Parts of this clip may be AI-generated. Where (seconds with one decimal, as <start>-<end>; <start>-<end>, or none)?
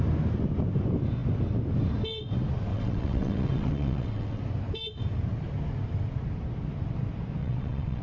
2.7-4.4; 7.4-8.0